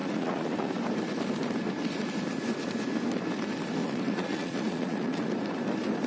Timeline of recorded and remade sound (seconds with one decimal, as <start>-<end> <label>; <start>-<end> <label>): 0.0-0.7 remade; 0.7-3.8 recorded; 3.8-5.3 remade; 5.3-6.1 recorded